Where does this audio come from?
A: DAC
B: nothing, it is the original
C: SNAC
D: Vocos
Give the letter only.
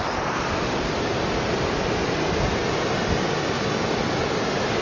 B